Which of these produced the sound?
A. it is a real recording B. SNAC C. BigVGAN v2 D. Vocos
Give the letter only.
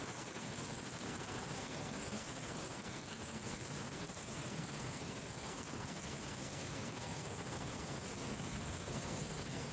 B